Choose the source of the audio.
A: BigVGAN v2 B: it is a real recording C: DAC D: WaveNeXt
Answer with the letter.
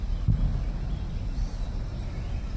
B